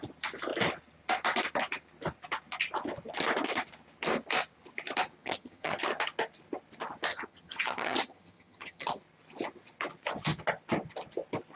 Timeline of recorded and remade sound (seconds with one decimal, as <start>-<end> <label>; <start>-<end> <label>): 0.0-5.2 recorded; 5.2-5.8 remade; 5.8-7.1 recorded; 7.1-9.0 remade; 9.0-11.6 recorded

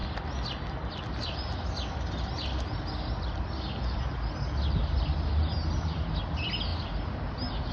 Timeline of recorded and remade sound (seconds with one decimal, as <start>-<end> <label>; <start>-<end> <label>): 0.0-6.7 recorded; 6.7-7.7 remade

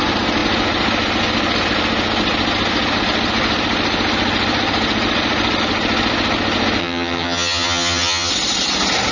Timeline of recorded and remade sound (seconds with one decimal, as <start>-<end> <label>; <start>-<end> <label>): 0.0-6.8 recorded; 6.8-8.3 remade; 8.3-9.1 recorded

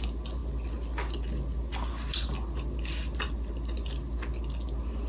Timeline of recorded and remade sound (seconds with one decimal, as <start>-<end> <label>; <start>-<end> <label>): 0.0-5.1 recorded

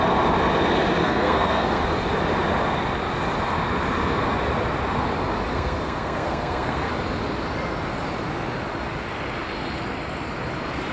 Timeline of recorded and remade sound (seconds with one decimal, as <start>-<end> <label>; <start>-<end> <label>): 0.0-1.0 recorded; 1.0-1.8 remade; 1.8-5.5 recorded; 5.5-6.9 remade; 6.9-10.9 recorded